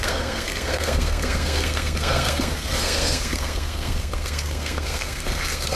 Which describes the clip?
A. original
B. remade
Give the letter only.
B